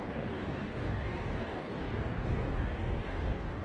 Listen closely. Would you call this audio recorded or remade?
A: remade